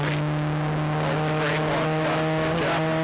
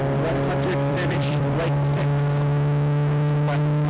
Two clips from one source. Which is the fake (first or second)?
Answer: second